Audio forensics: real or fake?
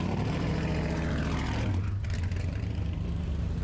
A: fake